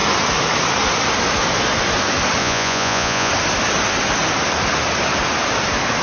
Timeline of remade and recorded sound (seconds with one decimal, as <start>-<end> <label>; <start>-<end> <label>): 0.0-2.4 recorded; 2.4-3.3 remade; 3.3-6.0 recorded